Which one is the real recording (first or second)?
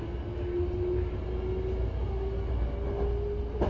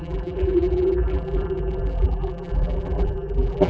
first